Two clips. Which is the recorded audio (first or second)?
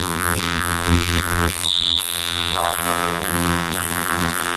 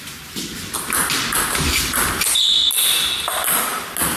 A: second